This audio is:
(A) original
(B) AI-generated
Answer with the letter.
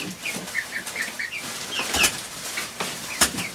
B